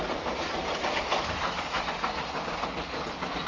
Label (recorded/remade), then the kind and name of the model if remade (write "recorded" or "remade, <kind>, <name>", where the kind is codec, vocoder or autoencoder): recorded